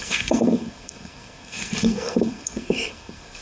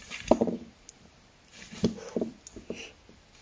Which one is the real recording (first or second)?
second